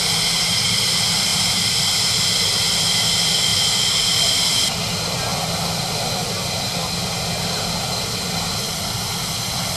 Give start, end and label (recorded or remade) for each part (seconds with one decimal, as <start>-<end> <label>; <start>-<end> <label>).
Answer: 0.0-1.3 recorded; 1.3-2.2 remade; 2.2-9.8 recorded